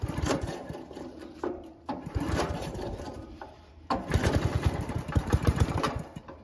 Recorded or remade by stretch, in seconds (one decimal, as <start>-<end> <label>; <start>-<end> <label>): 0.0-3.7 remade; 3.7-4.6 recorded; 4.6-6.4 remade